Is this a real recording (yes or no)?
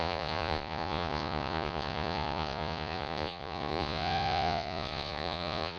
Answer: no